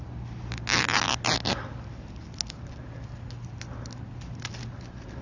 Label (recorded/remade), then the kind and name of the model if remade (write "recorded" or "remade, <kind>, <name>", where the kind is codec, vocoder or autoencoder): recorded